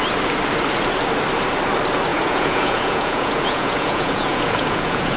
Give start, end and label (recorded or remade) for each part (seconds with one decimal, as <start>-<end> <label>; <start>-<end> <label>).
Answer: 0.0-2.1 recorded; 2.1-5.2 remade